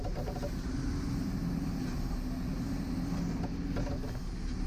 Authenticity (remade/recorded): recorded